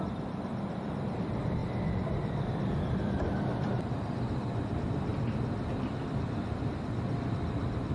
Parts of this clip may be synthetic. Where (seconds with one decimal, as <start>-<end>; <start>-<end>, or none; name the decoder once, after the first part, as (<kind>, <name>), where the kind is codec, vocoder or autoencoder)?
0.0-1.6 (vocoder, BigVGAN v2); 2.5-5.1; 5.7-7.9